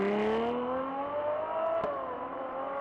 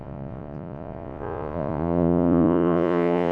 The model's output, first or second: second